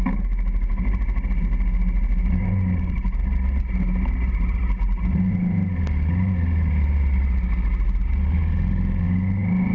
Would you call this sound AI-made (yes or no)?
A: no